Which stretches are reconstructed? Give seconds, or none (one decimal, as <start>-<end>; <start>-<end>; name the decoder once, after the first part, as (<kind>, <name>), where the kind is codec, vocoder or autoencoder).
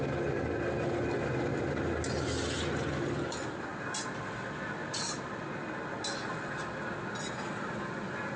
none